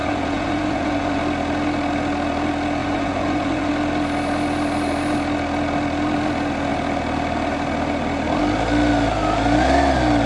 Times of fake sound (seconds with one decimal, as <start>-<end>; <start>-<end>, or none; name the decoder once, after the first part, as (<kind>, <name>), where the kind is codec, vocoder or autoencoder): 0.0-1.2 (vocoder, Vocos); 2.8-3.7